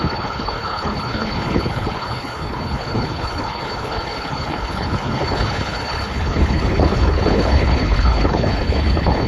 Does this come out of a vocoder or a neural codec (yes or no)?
yes